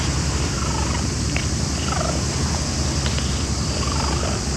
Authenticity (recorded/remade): remade